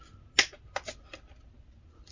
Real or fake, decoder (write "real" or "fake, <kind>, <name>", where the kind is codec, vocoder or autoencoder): real